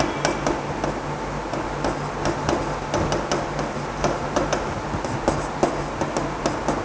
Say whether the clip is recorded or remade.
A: recorded